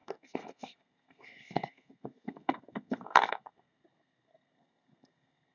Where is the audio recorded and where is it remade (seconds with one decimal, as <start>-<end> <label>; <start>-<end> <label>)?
0.0-5.5 remade